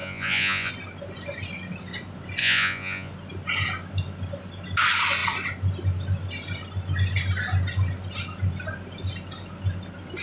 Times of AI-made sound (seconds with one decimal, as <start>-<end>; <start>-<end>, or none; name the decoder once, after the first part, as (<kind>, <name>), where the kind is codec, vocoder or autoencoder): 0.0-0.7 (vocoder, Vocos); 2.4-3.1